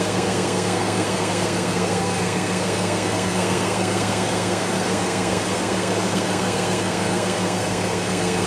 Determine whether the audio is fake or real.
fake